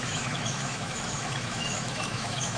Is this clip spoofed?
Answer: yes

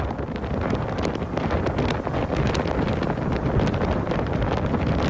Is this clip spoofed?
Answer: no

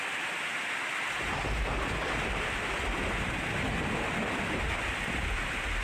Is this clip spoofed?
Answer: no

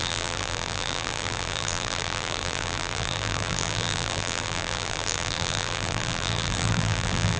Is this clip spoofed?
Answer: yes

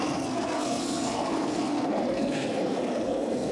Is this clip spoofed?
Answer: yes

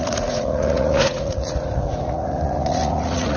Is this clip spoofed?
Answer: yes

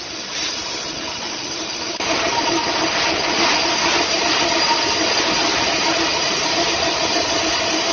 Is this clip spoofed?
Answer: no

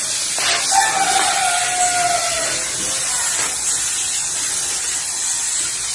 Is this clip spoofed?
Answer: no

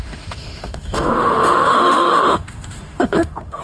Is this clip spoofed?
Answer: yes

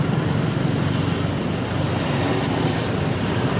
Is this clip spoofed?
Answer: no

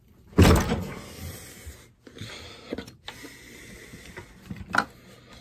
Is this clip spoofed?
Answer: no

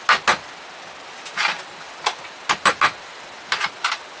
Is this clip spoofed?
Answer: no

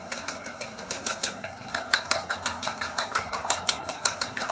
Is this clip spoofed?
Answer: yes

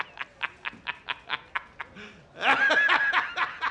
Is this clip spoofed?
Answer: no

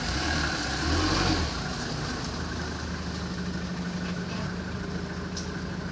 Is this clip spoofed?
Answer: no